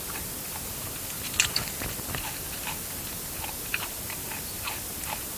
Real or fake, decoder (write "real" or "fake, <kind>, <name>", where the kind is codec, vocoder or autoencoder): real